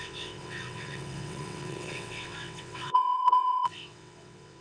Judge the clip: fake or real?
fake